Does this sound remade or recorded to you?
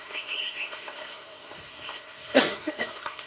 remade